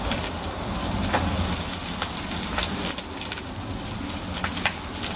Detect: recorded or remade recorded